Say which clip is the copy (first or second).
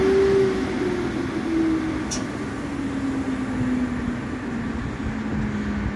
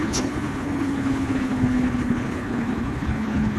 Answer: second